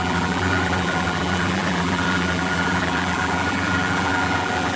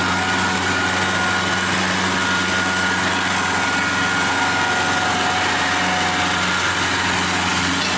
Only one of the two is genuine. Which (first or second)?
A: second